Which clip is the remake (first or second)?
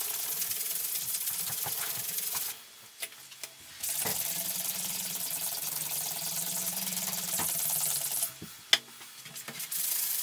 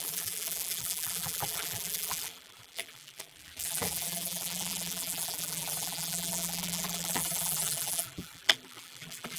second